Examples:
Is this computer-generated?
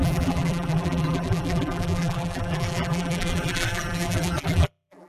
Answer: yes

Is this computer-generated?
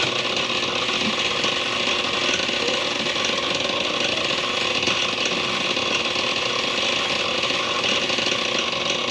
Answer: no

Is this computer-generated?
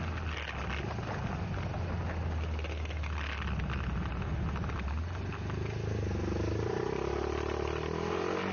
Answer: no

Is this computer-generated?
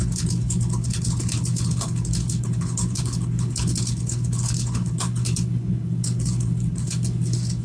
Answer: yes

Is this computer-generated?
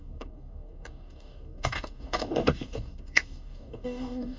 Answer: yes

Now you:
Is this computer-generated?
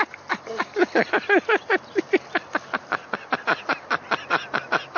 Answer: no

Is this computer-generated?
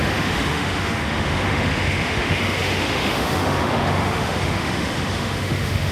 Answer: yes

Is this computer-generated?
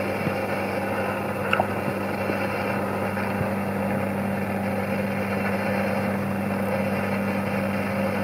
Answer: no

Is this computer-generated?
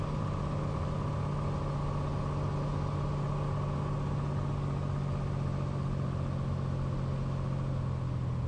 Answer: no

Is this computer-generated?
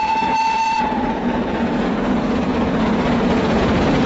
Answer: yes